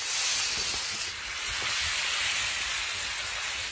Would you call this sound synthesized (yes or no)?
no